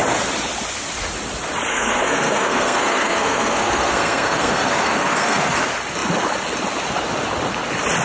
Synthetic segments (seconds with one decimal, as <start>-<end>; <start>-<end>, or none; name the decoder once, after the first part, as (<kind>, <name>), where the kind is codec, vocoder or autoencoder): 1.7-5.6 (codec, SNAC)

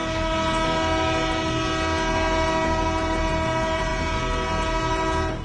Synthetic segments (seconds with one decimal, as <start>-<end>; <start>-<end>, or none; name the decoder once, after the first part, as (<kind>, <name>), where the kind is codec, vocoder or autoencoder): none

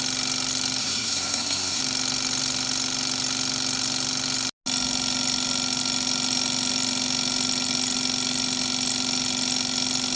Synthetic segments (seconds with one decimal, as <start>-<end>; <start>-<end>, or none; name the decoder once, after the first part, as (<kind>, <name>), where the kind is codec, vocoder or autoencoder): 0.8-1.8 (codec, SNAC)

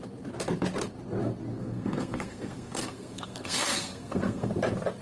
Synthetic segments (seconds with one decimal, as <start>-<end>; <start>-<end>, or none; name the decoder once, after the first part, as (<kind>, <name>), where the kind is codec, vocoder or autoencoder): 1.5-4.5 (codec, SNAC)